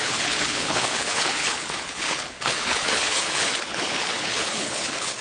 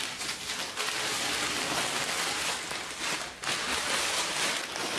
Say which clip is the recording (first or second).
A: second